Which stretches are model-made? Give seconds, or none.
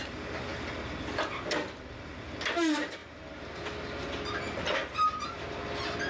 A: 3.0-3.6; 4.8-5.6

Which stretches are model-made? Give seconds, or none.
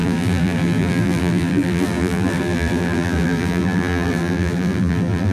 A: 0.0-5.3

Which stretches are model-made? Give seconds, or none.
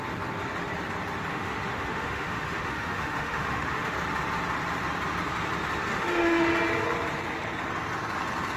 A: 1.3-3.9; 5.9-6.4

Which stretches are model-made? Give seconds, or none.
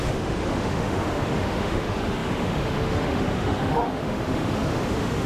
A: 0.0-5.3